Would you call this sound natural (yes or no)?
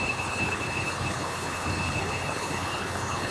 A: no